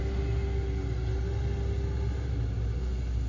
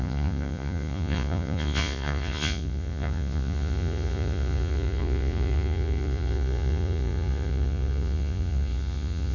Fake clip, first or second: second